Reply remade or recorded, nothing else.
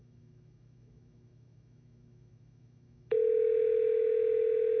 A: remade